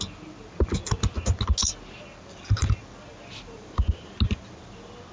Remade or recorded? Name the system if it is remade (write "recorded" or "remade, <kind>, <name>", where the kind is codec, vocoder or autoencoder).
recorded